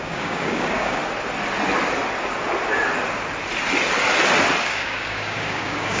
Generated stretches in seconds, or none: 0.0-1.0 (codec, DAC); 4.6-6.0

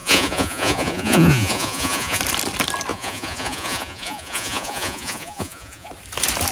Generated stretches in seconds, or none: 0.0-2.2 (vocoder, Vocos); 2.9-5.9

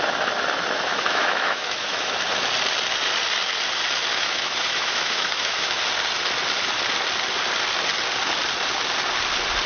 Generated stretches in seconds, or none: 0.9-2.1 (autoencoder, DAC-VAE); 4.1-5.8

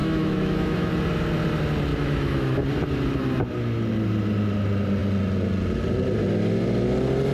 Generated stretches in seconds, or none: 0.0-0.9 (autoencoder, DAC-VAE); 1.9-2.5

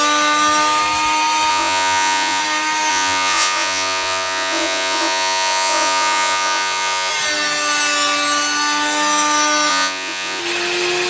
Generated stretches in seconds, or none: 1.5-2.4 (vocoder, Vocos); 2.9-7.1; 9.7-10.4